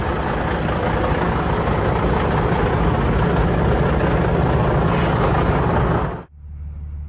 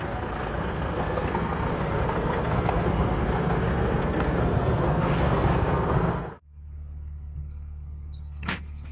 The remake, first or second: second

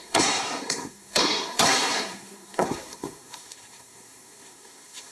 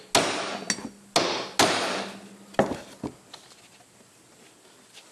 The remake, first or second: first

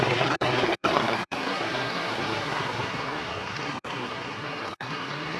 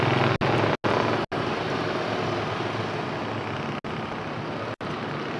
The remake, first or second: first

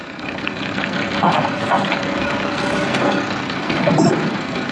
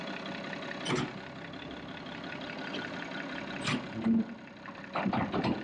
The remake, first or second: first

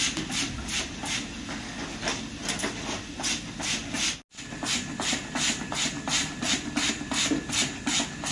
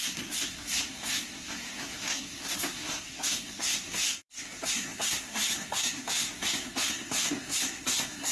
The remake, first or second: second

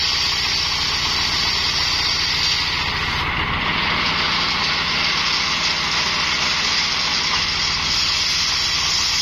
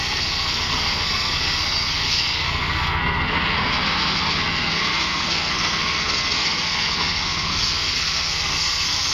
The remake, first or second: second